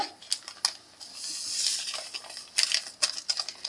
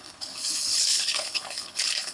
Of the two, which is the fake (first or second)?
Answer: second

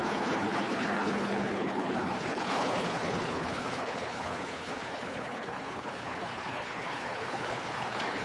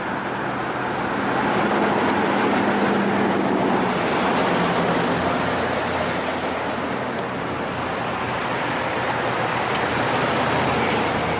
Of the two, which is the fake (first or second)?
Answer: first